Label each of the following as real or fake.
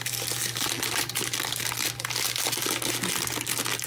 real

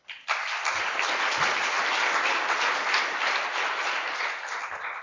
real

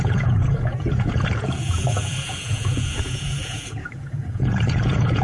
fake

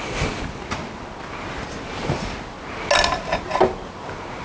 real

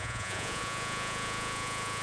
fake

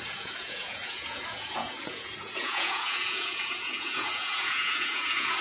fake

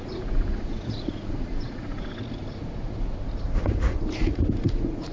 fake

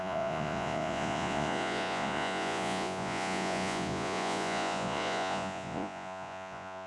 fake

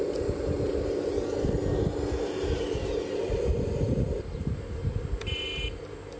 real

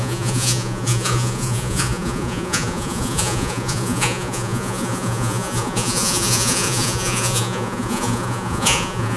fake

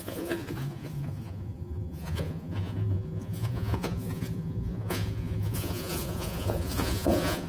fake